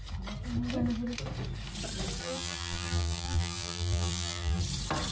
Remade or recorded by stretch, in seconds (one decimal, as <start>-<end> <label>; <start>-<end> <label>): 0.0-2.2 recorded; 2.2-4.6 remade; 4.6-5.1 recorded